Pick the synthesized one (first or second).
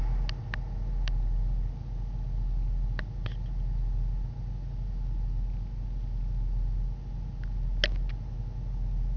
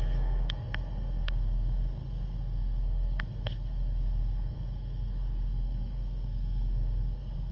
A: second